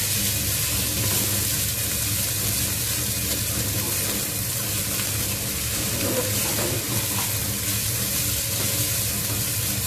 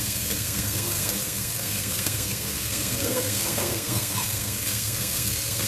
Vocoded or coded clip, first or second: second